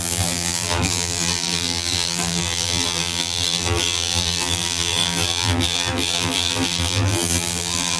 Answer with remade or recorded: remade